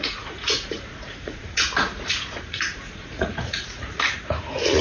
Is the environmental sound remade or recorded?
remade